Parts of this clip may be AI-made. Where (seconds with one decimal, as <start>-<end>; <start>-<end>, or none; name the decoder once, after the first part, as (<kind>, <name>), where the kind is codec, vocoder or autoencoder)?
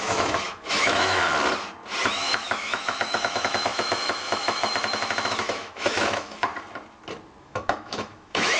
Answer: 0.0-1.2 (autoencoder, DAC-VAE); 2.1-6.5; 7.4-8.6